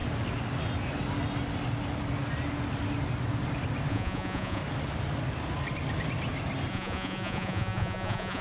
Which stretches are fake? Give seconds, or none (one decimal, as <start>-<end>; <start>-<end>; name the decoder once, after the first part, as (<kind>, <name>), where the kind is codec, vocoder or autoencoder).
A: 3.9-4.6 (vocoder, Vocos); 6.7-8.4